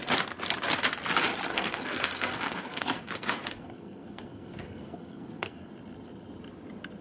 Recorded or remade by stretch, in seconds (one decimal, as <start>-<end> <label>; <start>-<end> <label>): 0.0-1.5 recorded; 1.5-5.7 remade; 5.7-7.0 recorded